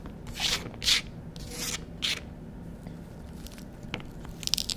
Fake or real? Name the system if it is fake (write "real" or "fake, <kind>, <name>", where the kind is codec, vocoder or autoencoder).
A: real